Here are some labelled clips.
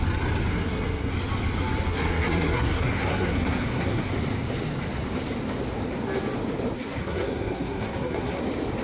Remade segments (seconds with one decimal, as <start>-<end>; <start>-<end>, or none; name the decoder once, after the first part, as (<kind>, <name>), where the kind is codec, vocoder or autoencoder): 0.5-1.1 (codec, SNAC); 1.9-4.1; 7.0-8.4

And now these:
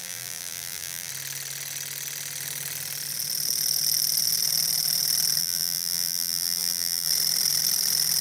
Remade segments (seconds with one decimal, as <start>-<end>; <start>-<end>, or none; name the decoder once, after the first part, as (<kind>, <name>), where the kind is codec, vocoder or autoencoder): 0.0-1.1 (vocoder, BigVGAN v2); 5.4-7.1

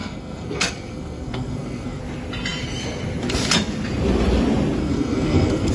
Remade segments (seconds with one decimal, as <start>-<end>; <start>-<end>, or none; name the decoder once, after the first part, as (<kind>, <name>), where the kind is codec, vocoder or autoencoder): 0.0-2.0 (codec, SNAC); 4.8-5.7

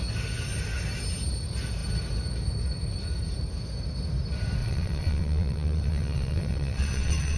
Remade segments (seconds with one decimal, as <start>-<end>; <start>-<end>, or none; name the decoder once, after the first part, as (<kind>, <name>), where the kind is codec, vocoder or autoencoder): 4.6-7.4 (vocoder, WaveNeXt)

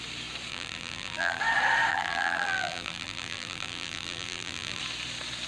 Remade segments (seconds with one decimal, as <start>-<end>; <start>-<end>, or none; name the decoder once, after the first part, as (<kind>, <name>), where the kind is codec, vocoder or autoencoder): 0.5-1.4 (vocoder, BigVGAN v2); 1.9-4.8